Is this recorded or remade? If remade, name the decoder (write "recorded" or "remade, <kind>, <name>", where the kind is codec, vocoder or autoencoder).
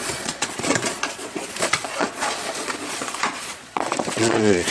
remade, vocoder, Vocos